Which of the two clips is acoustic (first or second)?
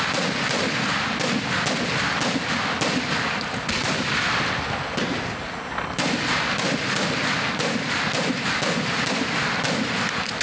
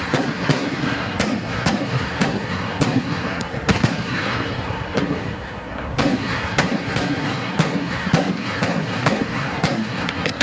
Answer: first